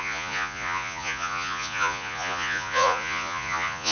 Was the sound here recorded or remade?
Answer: remade